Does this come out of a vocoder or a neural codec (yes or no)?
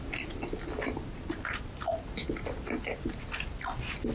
no